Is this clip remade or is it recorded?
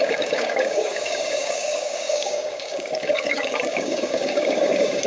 remade